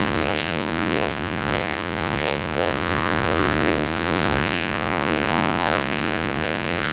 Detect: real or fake fake